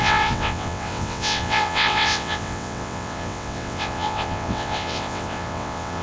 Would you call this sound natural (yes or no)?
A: no